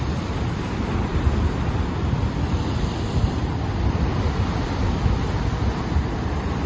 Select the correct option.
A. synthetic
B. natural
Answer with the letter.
A